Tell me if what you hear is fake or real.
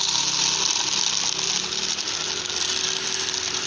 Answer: real